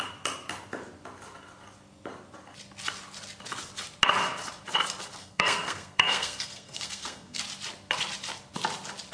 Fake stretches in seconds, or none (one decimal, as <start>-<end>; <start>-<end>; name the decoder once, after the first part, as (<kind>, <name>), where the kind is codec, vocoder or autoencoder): 5.2-7.4 (codec, SNAC)